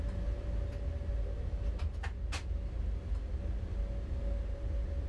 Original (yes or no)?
yes